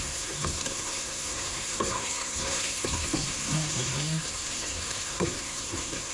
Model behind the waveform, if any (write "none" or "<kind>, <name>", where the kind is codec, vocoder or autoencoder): codec, SNAC